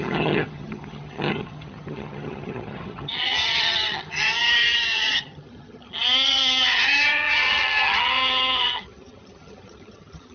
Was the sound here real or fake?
fake